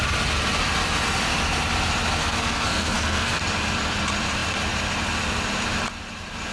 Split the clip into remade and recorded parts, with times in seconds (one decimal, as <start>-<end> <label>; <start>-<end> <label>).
0.0-2.2 recorded; 2.2-3.4 remade; 3.4-6.5 recorded